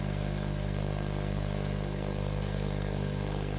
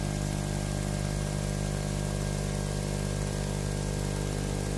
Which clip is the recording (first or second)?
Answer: second